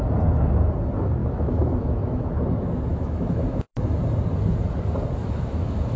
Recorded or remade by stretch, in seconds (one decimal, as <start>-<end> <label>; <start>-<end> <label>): 0.0-1.2 recorded; 1.2-2.3 remade; 2.3-2.9 recorded; 2.9-3.8 remade; 3.8-5.2 recorded; 5.2-6.0 remade